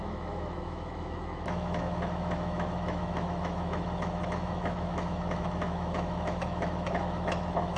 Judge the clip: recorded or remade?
remade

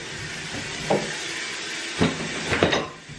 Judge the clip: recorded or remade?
recorded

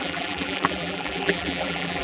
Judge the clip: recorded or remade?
remade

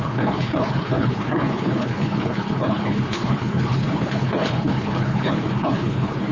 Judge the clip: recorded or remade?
remade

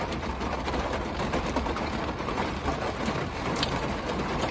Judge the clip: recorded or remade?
recorded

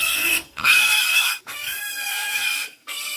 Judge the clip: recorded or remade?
remade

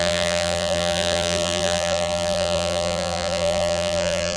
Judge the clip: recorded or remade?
remade